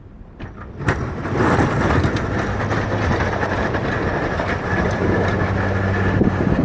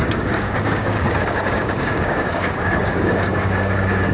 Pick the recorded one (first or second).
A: first